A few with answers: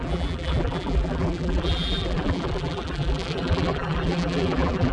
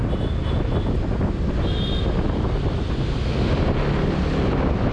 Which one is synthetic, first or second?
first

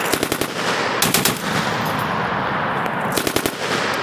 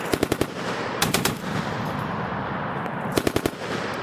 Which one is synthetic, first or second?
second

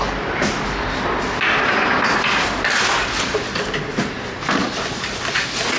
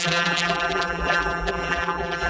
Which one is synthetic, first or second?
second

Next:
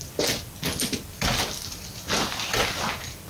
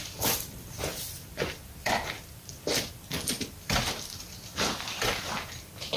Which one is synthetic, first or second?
second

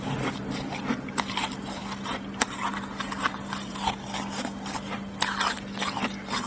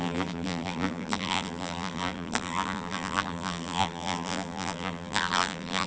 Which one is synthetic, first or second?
second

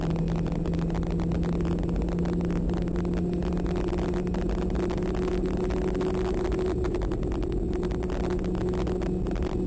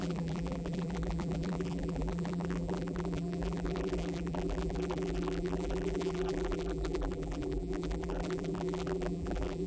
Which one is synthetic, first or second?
second